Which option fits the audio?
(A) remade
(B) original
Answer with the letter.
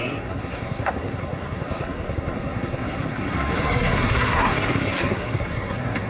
A